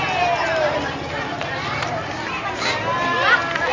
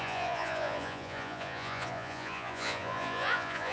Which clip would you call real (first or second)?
first